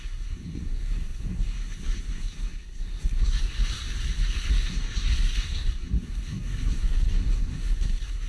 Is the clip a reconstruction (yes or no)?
yes